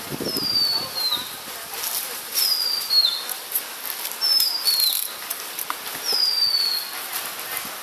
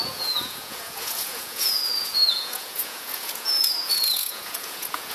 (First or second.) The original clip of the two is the first